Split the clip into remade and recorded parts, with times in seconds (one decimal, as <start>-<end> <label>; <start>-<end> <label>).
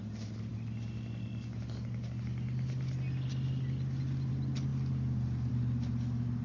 0.0-6.4 recorded